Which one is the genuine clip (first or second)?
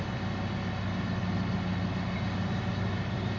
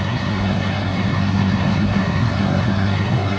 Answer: first